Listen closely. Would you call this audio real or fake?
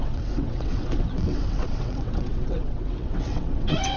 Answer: fake